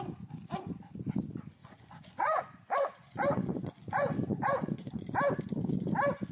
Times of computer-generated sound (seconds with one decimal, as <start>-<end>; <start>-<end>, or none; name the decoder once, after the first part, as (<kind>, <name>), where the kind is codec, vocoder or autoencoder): 1.6-5.1 (vocoder, Vocos)